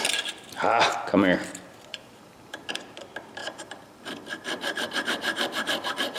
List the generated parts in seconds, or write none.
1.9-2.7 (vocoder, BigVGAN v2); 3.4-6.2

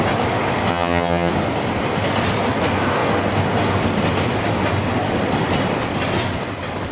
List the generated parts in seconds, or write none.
0.7-1.3 (vocoder, HiFi-GAN)

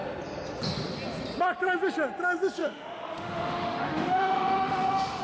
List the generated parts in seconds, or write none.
2.6-5.2 (autoencoder, DAC-VAE)

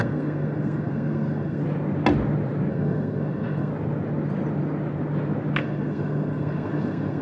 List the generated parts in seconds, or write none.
0.0-1.6 (codec, SNAC); 2.7-3.7; 5.6-7.2

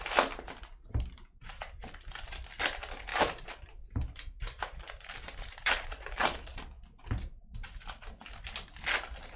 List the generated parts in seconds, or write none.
3.1-6.2 (vocoder, BigVGAN v2)